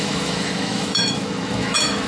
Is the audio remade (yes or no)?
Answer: yes